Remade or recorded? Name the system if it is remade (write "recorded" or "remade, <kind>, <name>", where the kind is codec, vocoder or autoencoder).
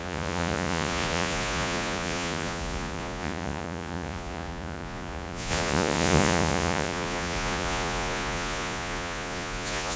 remade, vocoder, Vocos